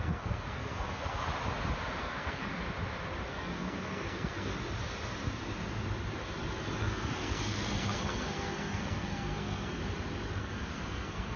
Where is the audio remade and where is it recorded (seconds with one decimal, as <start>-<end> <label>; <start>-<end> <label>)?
0.0-1.2 remade; 1.2-2.0 recorded; 2.0-2.5 remade; 2.5-3.3 recorded; 3.3-4.5 remade; 4.5-6.8 recorded; 6.8-9.8 remade; 9.8-10.4 recorded; 10.4-11.4 remade